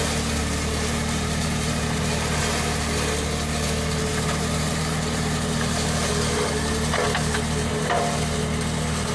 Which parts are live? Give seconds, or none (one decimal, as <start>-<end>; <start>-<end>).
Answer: 0.0-0.4; 2.4-4.1; 6.1-9.1